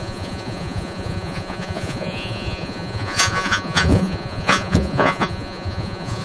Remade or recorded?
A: remade